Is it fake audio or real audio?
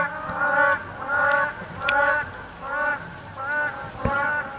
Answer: real